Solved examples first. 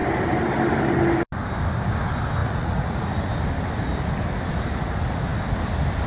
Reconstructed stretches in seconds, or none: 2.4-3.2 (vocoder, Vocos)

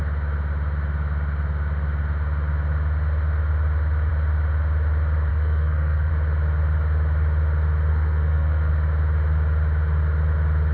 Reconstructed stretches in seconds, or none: 5.3-6.1 (codec, SNAC); 7.9-8.7

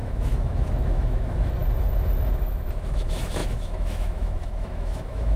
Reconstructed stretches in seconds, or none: 0.0-1.6 (autoencoder, DAC-VAE); 2.3-5.4

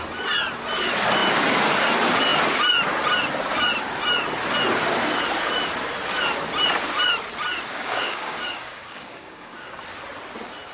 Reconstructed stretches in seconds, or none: 7.7-9.8 (codec, DAC)

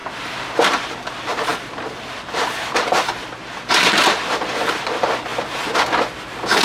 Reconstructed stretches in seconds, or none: 0.0-5.3 (vocoder, BigVGAN v2)

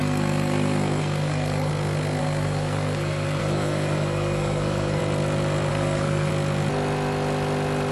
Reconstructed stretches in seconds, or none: 0.0-1.7 (codec, SNAC); 2.2-5.0; 5.7-6.3

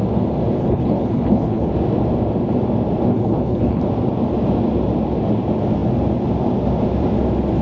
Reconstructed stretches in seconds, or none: 0.6-1.7 (codec, HILCodec); 3.1-3.8